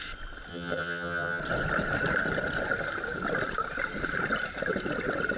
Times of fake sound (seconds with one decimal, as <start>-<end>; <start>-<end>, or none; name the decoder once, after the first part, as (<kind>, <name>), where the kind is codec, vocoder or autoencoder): 0.5-1.4 (vocoder, HiFi-GAN)